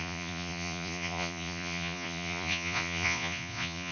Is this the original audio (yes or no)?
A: no